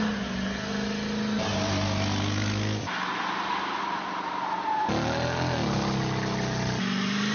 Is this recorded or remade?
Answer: recorded